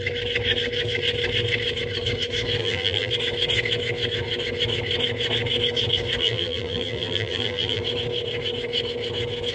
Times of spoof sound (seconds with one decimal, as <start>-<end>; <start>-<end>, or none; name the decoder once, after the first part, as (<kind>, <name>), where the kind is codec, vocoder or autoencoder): 2.6-3.1 (vocoder, BigVGAN v2); 6.2-7.8